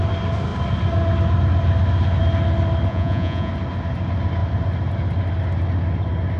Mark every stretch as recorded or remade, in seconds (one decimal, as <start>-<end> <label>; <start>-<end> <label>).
0.0-2.9 recorded; 2.9-3.5 remade; 3.5-6.4 recorded